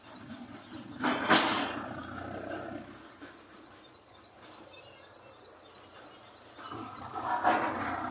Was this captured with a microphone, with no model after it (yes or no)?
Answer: yes